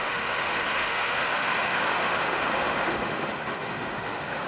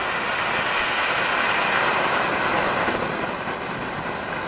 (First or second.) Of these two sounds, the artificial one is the first